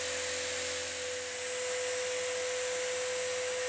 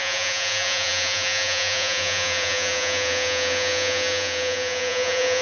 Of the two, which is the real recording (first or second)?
first